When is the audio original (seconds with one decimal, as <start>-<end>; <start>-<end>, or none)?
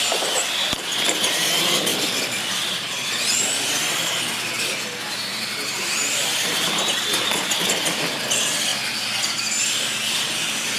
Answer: 0.0-1.9; 3.1-10.8